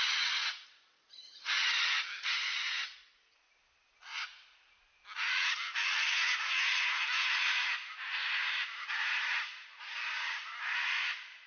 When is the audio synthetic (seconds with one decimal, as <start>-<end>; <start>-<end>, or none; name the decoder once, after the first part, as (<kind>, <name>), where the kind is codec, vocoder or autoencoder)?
none